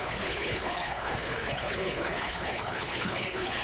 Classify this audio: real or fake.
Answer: fake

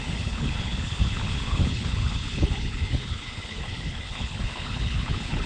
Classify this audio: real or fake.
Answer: fake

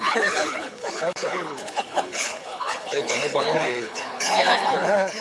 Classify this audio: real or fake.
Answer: fake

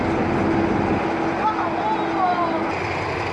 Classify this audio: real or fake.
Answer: real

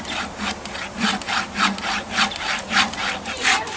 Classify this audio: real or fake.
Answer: real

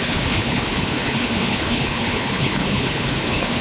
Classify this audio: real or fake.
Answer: fake